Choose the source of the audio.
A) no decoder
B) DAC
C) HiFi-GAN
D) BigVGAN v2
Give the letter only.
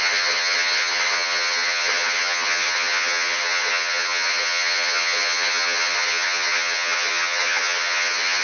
C